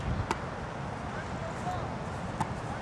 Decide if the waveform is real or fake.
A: real